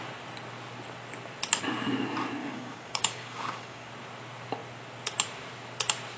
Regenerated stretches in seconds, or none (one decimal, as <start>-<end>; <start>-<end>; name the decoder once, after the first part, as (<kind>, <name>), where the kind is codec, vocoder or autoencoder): 2.4-3.9 (codec, DAC)